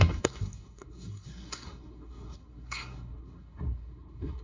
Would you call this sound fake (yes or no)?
yes